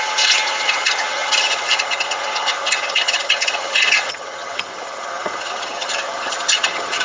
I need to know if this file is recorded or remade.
remade